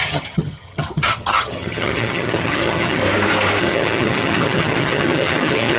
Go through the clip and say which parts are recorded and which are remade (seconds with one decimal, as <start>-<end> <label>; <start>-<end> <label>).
0.0-3.0 remade; 3.0-3.6 recorded; 3.6-5.8 remade